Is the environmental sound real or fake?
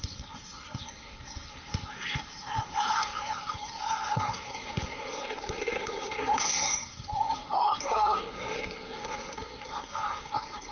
fake